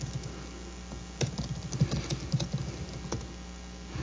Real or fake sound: real